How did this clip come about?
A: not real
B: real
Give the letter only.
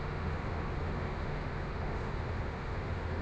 A